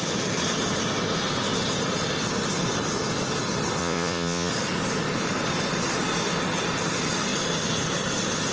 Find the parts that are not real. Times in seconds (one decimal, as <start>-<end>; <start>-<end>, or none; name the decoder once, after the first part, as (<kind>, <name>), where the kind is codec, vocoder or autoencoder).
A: 3.8-4.5 (vocoder, Vocos)